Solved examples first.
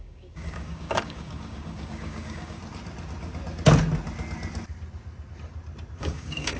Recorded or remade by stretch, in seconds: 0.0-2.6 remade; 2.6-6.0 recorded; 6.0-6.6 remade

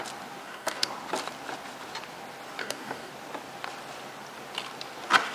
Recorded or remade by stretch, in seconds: 0.0-0.4 recorded; 0.4-0.9 remade; 0.9-2.6 recorded; 2.6-3.1 remade; 3.1-5.3 recorded

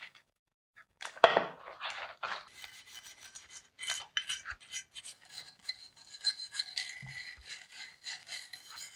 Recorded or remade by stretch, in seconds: 0.0-1.3 remade; 1.3-5.0 recorded; 5.0-6.8 remade; 6.8-7.5 recorded; 7.5-9.0 remade

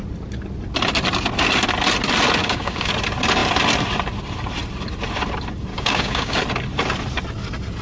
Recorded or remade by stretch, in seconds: 0.0-2.4 recorded; 2.4-2.9 remade; 2.9-5.7 recorded; 5.7-6.4 remade; 6.4-7.8 recorded

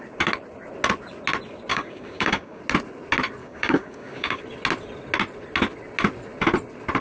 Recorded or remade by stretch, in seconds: 0.0-1.7 recorded; 1.7-2.6 remade; 2.6-3.4 recorded; 3.4-4.4 remade; 4.4-7.0 recorded

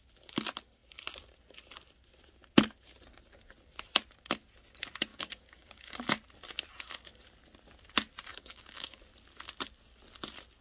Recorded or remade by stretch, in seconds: 0.0-5.1 recorded; 5.1-6.0 remade; 6.0-8.3 recorded; 8.3-9.0 remade; 9.0-10.6 recorded

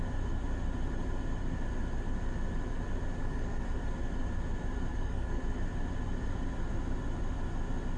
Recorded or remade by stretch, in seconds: 0.0-3.2 recorded; 3.2-3.7 remade; 3.7-4.9 recorded; 4.9-5.4 remade; 5.4-8.0 recorded

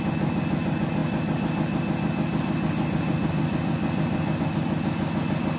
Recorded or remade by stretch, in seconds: 0.0-5.6 recorded